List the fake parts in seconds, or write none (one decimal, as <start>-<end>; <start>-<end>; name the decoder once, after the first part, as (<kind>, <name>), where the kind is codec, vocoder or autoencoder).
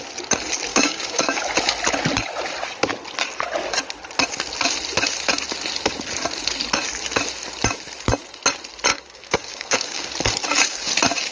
0.7-1.4 (codec, DAC); 8.9-10.1